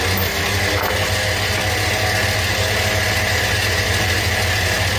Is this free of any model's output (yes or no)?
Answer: yes